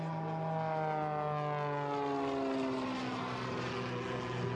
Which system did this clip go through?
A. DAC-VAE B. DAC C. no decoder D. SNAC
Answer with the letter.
C